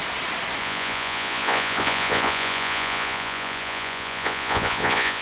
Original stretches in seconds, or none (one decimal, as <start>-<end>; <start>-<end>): 0.0-0.6